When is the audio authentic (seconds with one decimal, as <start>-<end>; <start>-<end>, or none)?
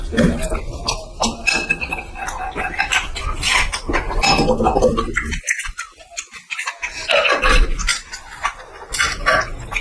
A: 0.0-9.8